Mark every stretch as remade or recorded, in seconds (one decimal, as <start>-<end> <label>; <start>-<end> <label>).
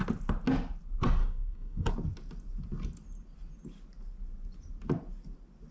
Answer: 0.0-1.2 recorded; 1.2-1.9 remade; 1.9-5.7 recorded